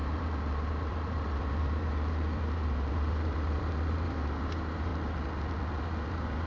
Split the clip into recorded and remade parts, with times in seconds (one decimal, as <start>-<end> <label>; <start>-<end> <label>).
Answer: 0.0-4.9 remade; 4.9-6.1 recorded; 6.1-6.5 remade